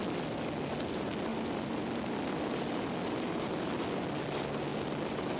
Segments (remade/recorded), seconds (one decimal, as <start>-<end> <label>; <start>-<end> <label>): 0.0-5.4 recorded